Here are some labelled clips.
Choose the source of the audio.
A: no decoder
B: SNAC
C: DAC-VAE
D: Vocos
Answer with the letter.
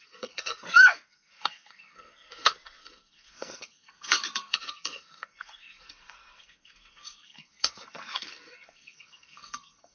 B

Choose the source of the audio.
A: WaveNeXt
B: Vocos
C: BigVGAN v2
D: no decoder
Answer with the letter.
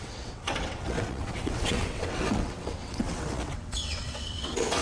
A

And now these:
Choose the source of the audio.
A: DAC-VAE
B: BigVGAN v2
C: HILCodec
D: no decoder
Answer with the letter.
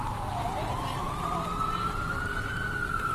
B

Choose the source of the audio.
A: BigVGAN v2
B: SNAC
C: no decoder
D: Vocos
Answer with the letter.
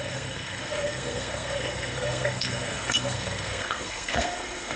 B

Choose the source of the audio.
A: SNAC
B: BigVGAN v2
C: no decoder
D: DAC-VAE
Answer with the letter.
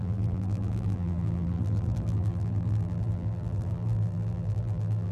B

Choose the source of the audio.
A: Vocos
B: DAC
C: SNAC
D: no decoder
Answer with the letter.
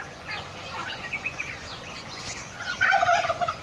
A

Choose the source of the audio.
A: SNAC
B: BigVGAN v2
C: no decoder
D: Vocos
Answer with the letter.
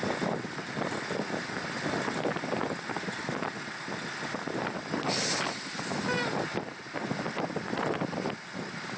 C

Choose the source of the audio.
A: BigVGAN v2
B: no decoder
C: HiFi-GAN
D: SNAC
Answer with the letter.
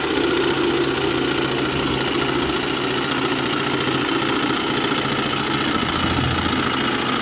B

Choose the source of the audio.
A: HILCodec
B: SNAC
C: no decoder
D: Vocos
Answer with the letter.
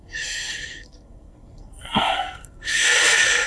B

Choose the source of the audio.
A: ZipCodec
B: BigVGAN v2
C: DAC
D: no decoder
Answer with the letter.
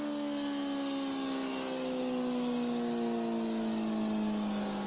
D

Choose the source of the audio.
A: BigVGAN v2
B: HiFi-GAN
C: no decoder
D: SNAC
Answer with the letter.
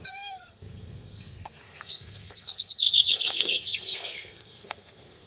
D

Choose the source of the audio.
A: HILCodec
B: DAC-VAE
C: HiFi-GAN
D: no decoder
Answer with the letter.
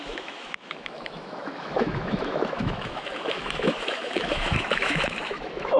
B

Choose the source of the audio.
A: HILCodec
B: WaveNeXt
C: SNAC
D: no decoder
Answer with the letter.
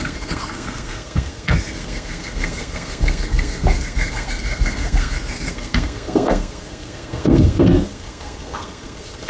C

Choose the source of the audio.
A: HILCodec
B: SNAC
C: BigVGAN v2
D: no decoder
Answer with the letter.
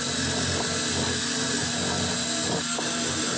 D